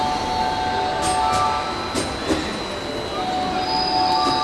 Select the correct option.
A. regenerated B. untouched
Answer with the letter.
B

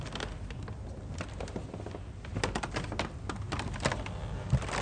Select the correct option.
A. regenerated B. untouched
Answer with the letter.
B